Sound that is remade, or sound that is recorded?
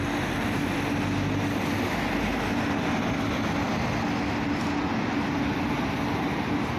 recorded